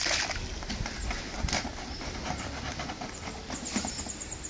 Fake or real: real